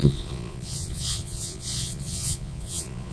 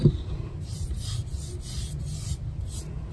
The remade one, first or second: first